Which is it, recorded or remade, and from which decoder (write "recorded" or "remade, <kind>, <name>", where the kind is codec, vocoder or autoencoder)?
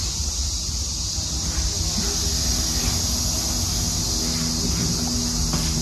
recorded